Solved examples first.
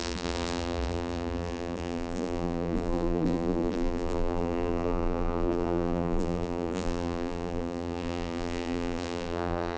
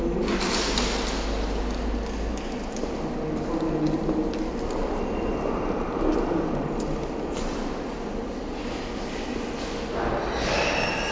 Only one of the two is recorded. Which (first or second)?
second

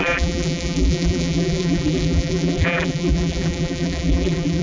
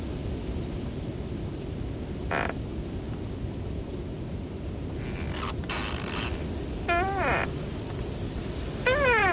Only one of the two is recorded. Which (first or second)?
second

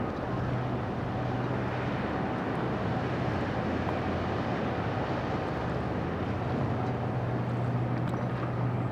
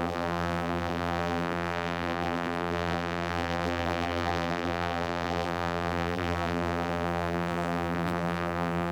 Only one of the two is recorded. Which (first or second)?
first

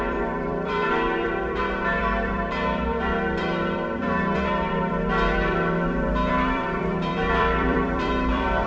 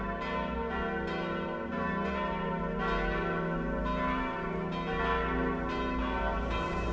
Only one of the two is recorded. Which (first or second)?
second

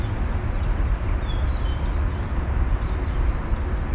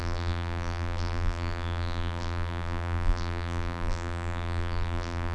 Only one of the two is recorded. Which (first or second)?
first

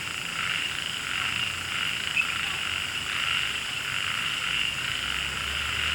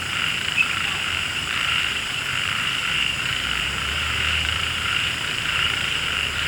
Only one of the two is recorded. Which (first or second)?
first